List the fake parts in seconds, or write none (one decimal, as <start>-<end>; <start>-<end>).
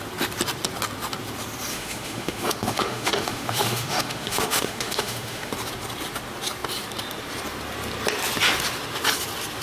1.7-5.5